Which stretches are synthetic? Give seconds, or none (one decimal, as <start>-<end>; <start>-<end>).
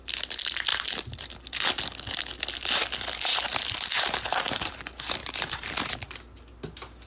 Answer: 0.7-1.3; 3.3-4.7; 5.2-5.9